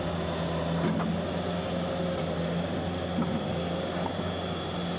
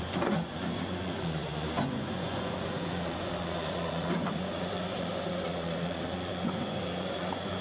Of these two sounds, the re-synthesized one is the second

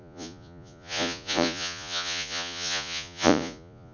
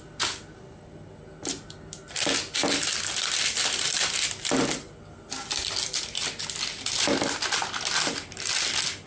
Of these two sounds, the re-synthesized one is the first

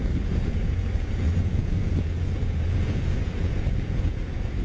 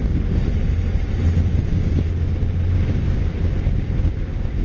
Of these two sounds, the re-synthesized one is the first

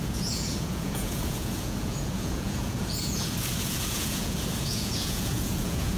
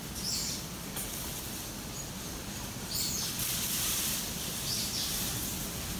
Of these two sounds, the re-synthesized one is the first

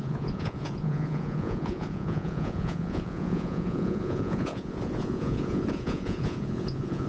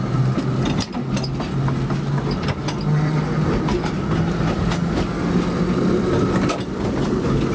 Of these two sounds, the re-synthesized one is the first